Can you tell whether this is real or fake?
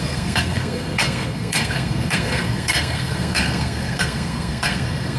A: fake